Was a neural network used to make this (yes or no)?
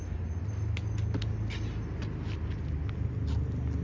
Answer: no